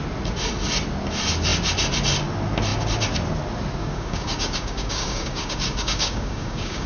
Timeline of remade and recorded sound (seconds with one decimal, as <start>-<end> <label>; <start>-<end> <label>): 0.0-3.8 recorded; 3.8-6.9 remade